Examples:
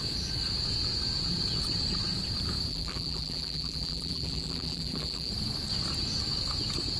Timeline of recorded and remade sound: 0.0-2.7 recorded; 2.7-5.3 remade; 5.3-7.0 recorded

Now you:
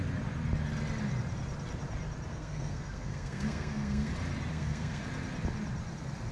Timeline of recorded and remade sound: 0.0-2.3 recorded; 2.3-4.1 remade; 4.1-4.5 recorded; 4.5-5.0 remade; 5.0-6.3 recorded

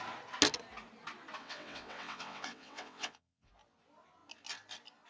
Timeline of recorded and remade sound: 0.0-1.4 recorded; 1.4-3.5 remade; 3.5-5.1 recorded

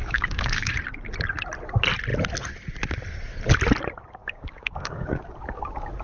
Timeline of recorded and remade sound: 0.0-0.7 remade; 0.7-4.2 recorded; 4.2-5.2 remade; 5.2-6.0 recorded